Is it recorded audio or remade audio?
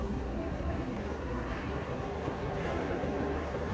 remade